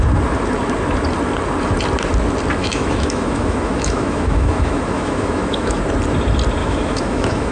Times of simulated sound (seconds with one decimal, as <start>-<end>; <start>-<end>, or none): 2.6-5.8; 6.6-7.5